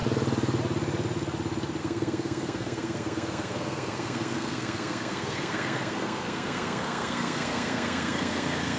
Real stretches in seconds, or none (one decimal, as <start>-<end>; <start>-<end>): 0.0-1.8